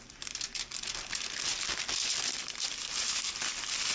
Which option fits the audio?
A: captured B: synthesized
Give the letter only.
A